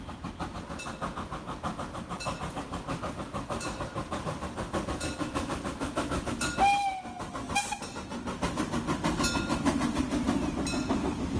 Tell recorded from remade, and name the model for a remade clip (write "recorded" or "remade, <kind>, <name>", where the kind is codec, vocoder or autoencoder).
recorded